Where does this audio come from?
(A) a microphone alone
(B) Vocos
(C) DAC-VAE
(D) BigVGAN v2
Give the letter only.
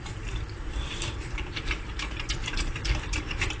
D